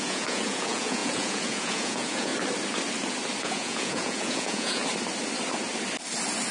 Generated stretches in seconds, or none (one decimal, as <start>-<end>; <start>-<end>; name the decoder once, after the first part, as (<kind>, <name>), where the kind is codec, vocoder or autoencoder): 0.0-2.3 (vocoder, Vocos); 3.4-4.8